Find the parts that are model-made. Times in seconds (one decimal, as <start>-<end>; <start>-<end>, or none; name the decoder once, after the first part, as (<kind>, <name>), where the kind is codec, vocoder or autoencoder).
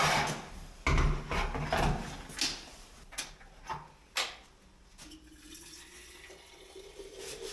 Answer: none